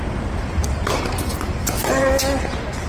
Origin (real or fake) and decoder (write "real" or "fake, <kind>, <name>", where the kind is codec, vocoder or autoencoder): real